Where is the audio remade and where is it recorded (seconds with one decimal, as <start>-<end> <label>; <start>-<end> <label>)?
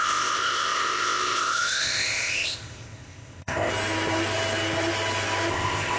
0.0-3.7 remade; 3.7-5.5 recorded; 5.5-6.0 remade